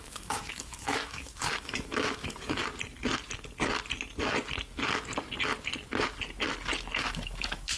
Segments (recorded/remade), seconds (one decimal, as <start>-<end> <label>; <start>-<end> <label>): 0.0-2.6 remade; 2.6-7.0 recorded; 7.0-7.8 remade